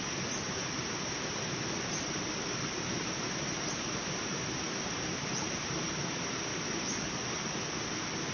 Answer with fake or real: real